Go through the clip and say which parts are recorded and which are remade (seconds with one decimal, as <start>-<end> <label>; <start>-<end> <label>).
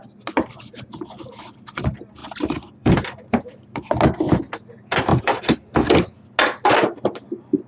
0.0-2.2 recorded; 2.2-3.9 remade; 3.9-5.1 recorded; 5.1-6.2 remade; 6.2-7.7 recorded